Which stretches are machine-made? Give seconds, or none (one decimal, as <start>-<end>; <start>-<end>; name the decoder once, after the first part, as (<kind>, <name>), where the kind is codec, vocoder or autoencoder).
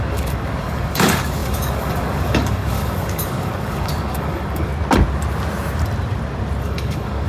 0.0-4.7 (codec, DAC); 6.6-7.3